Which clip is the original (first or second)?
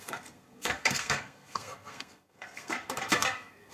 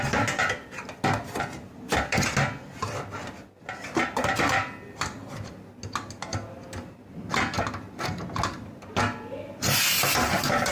second